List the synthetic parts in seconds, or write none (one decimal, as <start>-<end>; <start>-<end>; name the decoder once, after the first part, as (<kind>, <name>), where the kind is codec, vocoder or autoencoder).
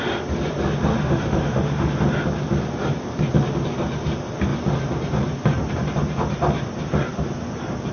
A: 0.9-1.9 (autoencoder, DAC-VAE)